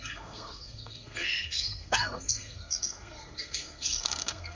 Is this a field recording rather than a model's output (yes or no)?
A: no